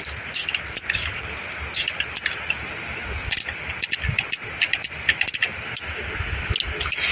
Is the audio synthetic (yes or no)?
no